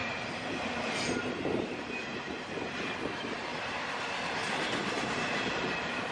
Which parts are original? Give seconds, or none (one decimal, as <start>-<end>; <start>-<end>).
4.4-5.0